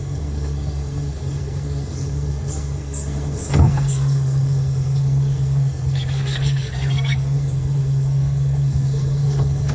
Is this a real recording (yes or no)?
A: no